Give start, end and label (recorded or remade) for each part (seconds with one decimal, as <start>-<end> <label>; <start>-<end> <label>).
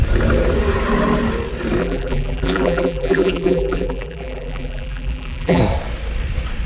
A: 0.0-1.8 recorded; 1.8-5.6 remade; 5.6-6.7 recorded